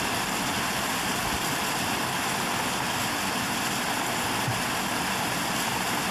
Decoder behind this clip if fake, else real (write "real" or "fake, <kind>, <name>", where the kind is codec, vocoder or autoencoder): real